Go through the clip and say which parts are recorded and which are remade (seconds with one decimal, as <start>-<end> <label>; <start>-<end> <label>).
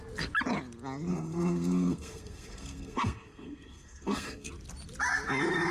0.0-1.1 recorded; 1.1-4.5 remade; 4.5-5.7 recorded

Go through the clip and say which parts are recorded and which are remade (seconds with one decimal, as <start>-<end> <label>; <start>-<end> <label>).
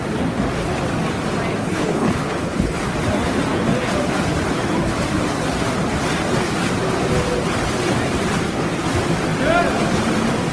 0.0-1.6 recorded; 1.6-2.8 remade; 2.8-10.5 recorded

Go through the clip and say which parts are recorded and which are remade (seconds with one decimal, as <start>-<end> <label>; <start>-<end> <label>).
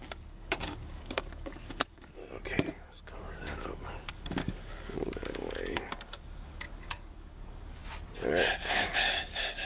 0.0-2.2 remade; 2.2-2.7 recorded; 2.7-7.8 remade; 7.8-8.6 recorded; 8.6-9.7 remade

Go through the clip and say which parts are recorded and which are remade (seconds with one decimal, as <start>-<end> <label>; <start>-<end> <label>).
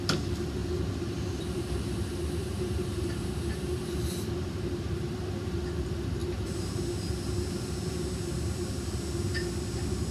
0.0-2.4 recorded; 2.4-4.7 remade; 4.7-6.2 recorded; 6.2-6.8 remade; 6.8-10.1 recorded